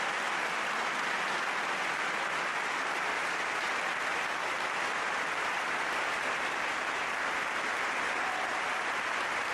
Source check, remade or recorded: recorded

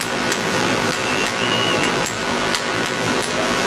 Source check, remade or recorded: remade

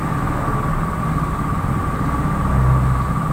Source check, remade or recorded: recorded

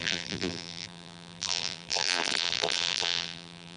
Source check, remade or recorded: remade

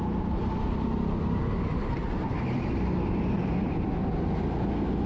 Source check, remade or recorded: recorded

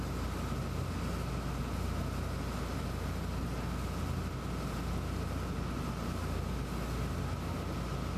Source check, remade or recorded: recorded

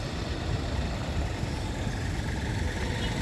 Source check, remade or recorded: recorded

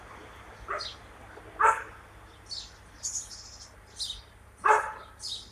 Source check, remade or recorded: recorded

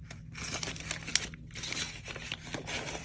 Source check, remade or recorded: recorded